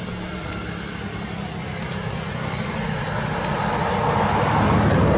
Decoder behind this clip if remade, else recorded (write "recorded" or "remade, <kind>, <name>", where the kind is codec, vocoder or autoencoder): recorded